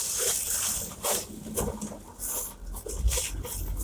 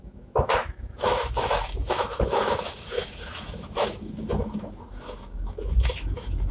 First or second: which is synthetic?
second